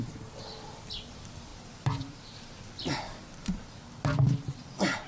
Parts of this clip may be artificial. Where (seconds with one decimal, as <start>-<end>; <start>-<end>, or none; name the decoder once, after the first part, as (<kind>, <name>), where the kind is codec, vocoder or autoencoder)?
1.5-3.7 (vocoder, BigVGAN v2)